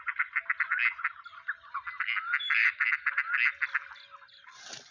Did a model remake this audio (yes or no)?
no